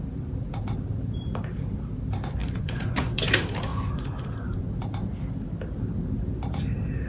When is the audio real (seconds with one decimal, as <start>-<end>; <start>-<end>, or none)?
0.0-2.4; 3.2-3.7; 4.7-7.1